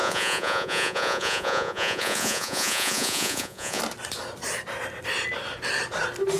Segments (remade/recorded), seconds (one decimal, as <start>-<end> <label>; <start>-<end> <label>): 0.0-3.8 remade; 3.8-6.4 recorded